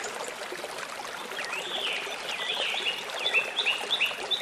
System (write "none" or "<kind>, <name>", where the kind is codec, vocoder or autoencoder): none